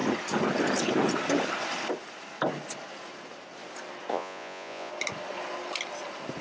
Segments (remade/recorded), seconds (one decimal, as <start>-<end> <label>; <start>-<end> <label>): 0.0-4.1 recorded; 4.1-4.9 remade; 4.9-6.4 recorded